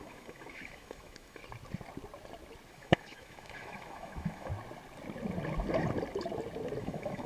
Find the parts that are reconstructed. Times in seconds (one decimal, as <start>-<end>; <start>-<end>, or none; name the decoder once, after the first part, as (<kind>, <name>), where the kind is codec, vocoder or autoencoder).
0.0-1.4 (autoencoder, DAC-VAE); 2.7-4.5; 6.8-7.3